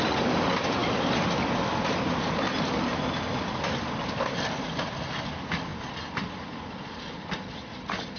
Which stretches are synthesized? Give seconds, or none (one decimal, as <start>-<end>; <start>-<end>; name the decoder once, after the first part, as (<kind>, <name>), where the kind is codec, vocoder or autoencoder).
none